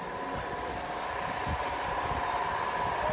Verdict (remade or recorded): recorded